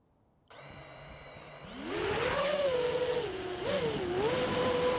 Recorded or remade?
recorded